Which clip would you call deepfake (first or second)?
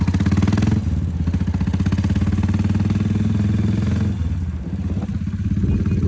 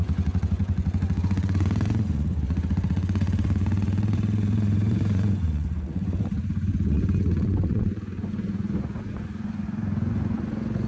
second